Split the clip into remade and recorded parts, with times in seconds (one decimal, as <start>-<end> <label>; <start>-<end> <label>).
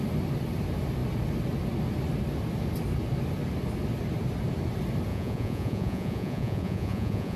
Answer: 0.0-5.1 recorded; 5.1-7.4 remade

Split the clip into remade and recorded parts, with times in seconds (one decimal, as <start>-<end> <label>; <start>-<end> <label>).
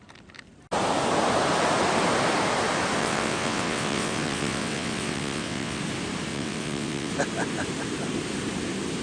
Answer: 0.0-3.0 recorded; 3.0-5.8 remade; 5.8-6.3 recorded; 6.3-7.1 remade; 7.1-9.0 recorded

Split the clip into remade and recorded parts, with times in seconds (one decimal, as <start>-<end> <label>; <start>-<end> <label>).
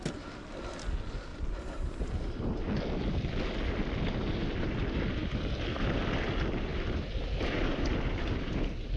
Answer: 0.0-1.3 recorded; 1.3-2.7 remade; 2.7-9.0 recorded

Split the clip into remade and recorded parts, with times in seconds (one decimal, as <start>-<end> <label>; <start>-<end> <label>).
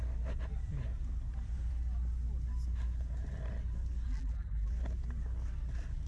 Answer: 0.0-4.1 recorded; 4.1-4.7 remade; 4.7-6.1 recorded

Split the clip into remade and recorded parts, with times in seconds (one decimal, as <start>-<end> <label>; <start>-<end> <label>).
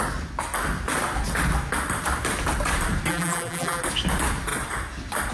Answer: 0.0-3.1 recorded; 3.1-3.8 remade; 3.8-5.3 recorded